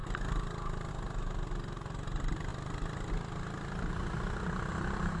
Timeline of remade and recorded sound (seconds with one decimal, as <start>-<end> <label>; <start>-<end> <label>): 0.0-5.2 recorded